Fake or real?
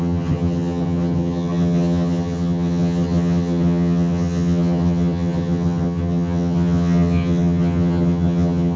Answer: fake